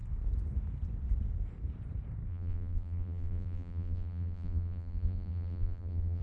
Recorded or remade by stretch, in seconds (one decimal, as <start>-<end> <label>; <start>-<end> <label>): 0.0-2.3 recorded; 2.3-6.2 remade